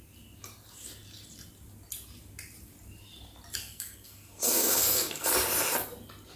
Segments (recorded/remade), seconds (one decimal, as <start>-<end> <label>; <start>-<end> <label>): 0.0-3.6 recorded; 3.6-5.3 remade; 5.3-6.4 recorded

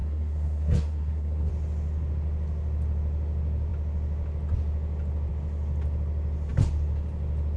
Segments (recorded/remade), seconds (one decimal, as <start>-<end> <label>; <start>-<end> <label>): 0.0-1.5 remade; 1.5-7.6 recorded

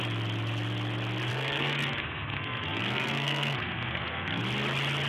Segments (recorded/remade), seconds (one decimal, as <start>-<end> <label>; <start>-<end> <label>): 0.0-1.3 recorded; 1.3-4.4 remade; 4.4-5.1 recorded

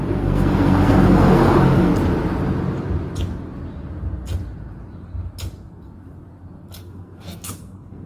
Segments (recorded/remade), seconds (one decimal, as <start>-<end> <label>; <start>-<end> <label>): 0.0-1.9 remade; 1.9-6.8 recorded; 6.8-8.1 remade

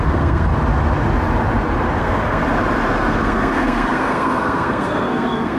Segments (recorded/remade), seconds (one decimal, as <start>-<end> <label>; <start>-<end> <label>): 0.0-0.5 remade; 0.5-2.0 recorded; 2.0-2.4 remade; 2.4-3.1 recorded; 3.1-5.6 remade

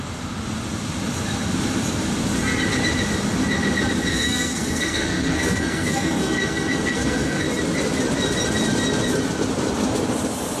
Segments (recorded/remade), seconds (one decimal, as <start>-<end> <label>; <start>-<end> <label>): 0.0-4.1 recorded; 4.1-7.4 remade; 7.4-10.6 recorded

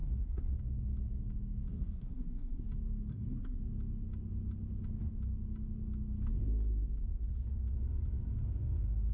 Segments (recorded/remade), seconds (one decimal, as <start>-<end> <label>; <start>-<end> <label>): 0.0-0.5 remade; 0.5-1.7 recorded; 1.7-2.6 remade; 2.6-3.1 recorded; 3.1-3.6 remade; 3.6-9.1 recorded

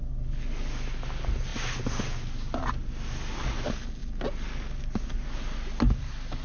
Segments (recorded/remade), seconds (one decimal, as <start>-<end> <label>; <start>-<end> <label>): 0.0-6.4 recorded